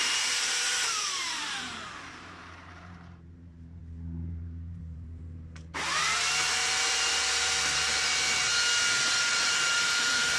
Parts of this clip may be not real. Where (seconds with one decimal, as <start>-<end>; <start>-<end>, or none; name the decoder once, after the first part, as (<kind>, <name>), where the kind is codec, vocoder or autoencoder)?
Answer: 0.0-8.5 (vocoder, BigVGAN v2); 9.2-10.4